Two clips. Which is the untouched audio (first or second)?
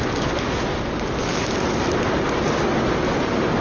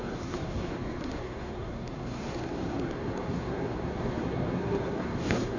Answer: first